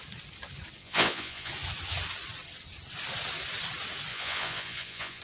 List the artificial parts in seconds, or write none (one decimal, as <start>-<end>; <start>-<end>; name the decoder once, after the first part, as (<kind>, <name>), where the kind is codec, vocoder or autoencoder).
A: 0.8-1.5 (vocoder, Vocos); 4.1-5.2